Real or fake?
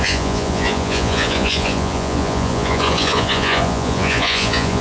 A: fake